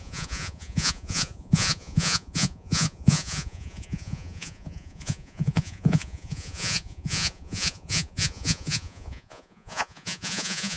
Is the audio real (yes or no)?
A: no